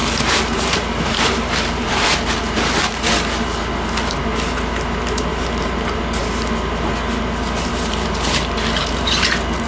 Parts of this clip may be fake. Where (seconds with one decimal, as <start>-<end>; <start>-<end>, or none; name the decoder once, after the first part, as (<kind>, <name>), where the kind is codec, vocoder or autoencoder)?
0.0-2.3 (vocoder, BigVGAN v2); 5.3-6.2; 7.7-9.7